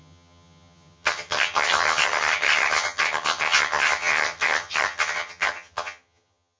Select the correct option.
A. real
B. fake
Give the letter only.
B